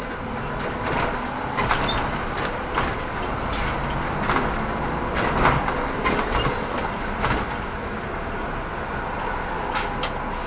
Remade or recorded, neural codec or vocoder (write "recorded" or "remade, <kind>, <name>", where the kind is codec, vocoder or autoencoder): recorded